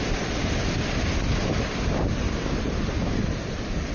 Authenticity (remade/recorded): recorded